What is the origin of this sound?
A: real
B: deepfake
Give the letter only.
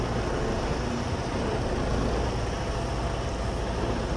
A